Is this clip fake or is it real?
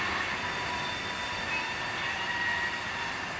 real